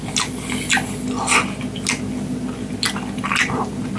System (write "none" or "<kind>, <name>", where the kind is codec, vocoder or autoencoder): none